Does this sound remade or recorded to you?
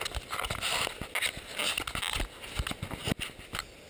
recorded